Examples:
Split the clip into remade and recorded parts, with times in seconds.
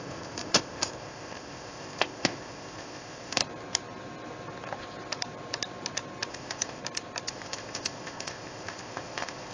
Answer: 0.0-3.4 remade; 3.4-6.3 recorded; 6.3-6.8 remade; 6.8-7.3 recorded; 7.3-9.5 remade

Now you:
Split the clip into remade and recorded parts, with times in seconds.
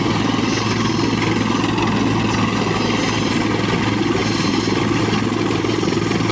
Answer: 0.0-4.2 recorded; 4.2-5.0 remade; 5.0-6.3 recorded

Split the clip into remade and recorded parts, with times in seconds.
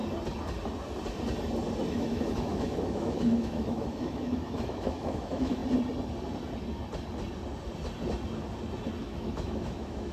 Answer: 0.0-1.9 recorded; 1.9-5.6 remade; 5.6-9.0 recorded; 9.0-10.1 remade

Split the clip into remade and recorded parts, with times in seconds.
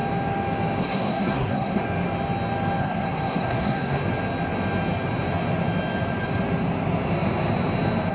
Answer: 0.0-0.8 recorded; 0.8-1.8 remade; 1.8-2.8 recorded; 2.8-4.0 remade; 4.0-8.1 recorded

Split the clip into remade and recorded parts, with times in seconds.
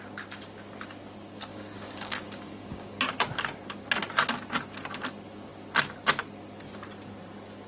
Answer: 0.0-1.5 recorded; 1.5-3.0 remade; 3.0-7.7 recorded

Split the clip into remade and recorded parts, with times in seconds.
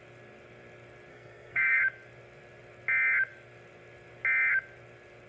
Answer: 0.0-1.1 recorded; 1.1-1.8 remade; 1.8-5.3 recorded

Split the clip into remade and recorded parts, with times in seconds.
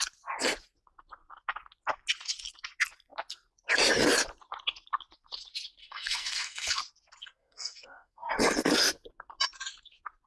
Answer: 0.0-5.8 recorded; 5.8-6.8 remade; 6.8-7.2 recorded; 7.2-8.3 remade; 8.3-10.3 recorded